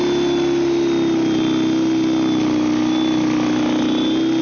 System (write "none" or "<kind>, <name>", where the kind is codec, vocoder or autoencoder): none